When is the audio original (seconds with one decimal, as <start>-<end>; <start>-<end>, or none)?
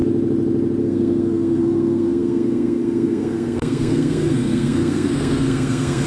0.0-0.8